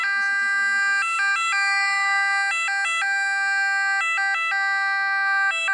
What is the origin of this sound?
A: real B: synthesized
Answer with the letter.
A